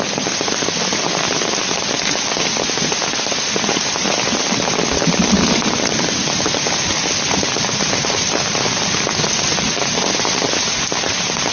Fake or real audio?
real